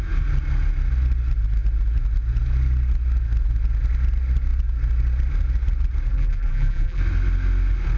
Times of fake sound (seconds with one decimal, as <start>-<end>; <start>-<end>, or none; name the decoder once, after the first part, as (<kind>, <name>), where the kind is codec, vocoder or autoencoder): 6.1-7.0 (vocoder, BigVGAN v2)